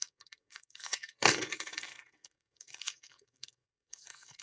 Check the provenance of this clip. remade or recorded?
remade